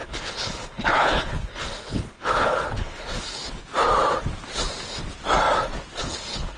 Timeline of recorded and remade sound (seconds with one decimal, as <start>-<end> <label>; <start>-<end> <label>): 0.0-3.4 remade; 3.4-6.0 recorded; 6.0-6.6 remade